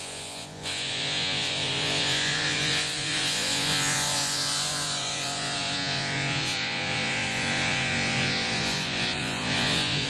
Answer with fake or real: fake